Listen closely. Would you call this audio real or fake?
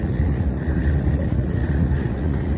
fake